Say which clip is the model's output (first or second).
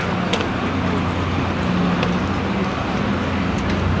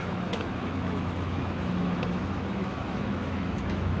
second